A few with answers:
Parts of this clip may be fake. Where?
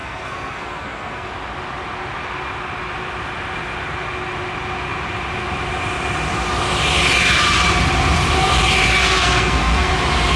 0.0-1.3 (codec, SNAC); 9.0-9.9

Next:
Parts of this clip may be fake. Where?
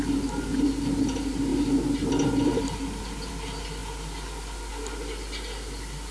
none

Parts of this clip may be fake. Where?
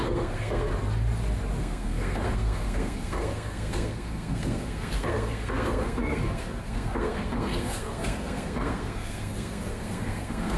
0.0-0.7 (codec, SNAC); 1.6-10.6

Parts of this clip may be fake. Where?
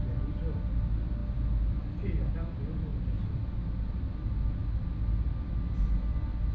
none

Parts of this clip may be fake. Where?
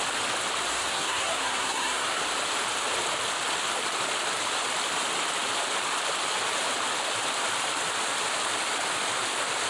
0.7-2.2 (codec, SNAC)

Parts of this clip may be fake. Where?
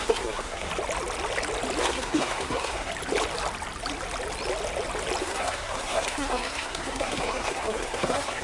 0.0-0.7 (codec, SNAC); 1.8-2.9; 5.2-8.4